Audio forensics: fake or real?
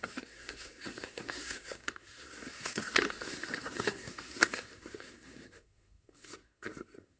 fake